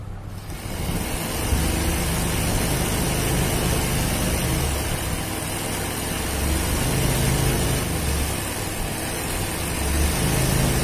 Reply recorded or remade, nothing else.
recorded